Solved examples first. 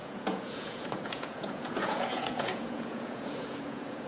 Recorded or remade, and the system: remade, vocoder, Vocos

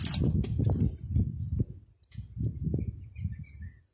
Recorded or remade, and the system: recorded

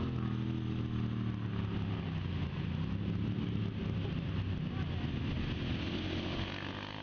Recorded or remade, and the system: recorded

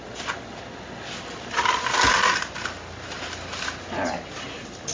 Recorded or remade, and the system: recorded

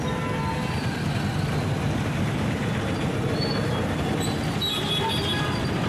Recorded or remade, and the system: recorded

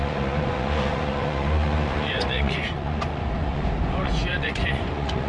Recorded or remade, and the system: remade, vocoder, Vocos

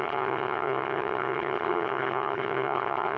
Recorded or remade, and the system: remade, vocoder, HiFi-GAN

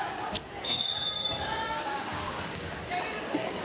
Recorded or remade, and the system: remade, codec, DAC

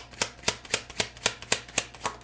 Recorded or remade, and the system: recorded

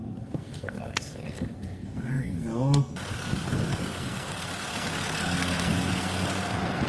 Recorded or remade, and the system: remade, codec, SNAC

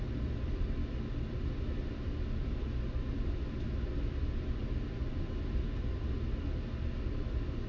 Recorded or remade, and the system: recorded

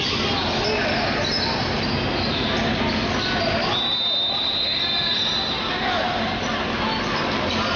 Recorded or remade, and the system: recorded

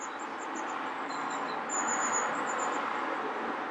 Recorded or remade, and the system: recorded